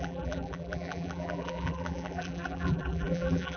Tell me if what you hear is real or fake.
fake